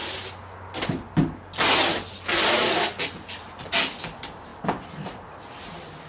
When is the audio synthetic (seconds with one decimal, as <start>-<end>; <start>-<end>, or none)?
none